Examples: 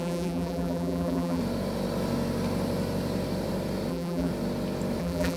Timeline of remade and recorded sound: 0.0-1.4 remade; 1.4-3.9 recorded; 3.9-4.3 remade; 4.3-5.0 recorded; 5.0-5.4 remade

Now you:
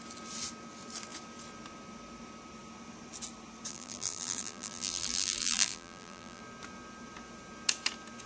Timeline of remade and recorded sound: 0.0-3.7 recorded; 3.7-6.4 remade; 6.4-8.3 recorded

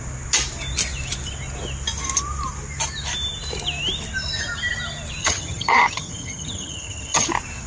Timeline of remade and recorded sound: 0.0-5.2 recorded; 5.2-7.3 remade; 7.3-7.7 recorded